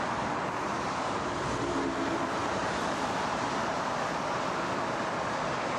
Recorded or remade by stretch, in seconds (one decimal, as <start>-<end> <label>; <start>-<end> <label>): 0.0-2.4 recorded; 2.4-3.8 remade; 3.8-5.8 recorded